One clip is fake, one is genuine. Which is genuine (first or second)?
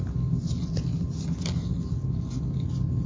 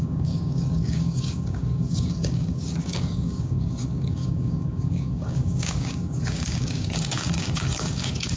first